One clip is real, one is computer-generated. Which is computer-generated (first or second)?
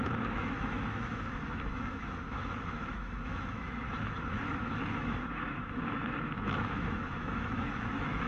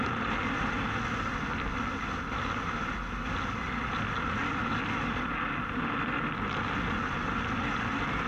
first